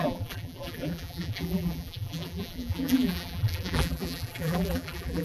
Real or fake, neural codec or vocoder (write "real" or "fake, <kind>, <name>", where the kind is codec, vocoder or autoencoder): fake, vocoder, BigVGAN v2